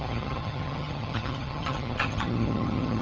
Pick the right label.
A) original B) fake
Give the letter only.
B